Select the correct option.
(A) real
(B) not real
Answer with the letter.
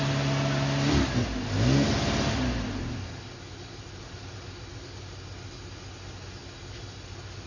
A